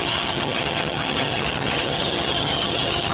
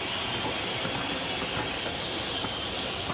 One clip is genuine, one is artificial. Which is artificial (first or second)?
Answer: first